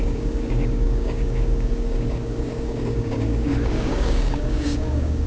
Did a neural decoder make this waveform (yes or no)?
yes